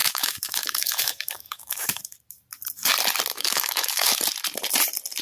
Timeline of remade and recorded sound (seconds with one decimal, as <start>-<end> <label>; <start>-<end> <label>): 0.0-2.0 remade; 2.0-3.3 recorded; 3.3-4.2 remade; 4.2-5.2 recorded